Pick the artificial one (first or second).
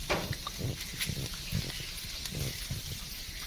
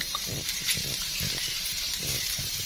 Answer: second